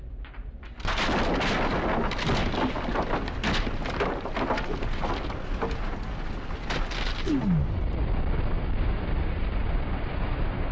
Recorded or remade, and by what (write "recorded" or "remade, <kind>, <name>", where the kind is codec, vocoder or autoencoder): recorded